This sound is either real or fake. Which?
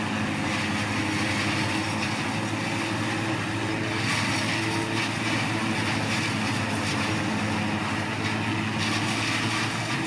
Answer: real